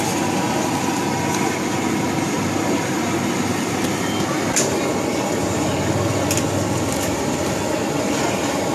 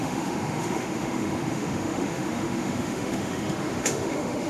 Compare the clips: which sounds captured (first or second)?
first